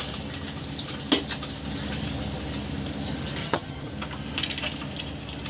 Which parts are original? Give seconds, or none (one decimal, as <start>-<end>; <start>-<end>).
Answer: 0.0-3.4; 3.9-5.5